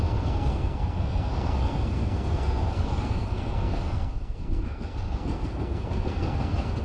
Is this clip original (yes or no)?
no